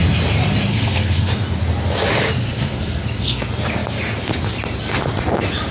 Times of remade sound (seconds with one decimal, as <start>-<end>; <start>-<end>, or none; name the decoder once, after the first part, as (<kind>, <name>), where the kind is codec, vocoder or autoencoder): 0.7-1.3 (codec, SNAC); 2.4-3.4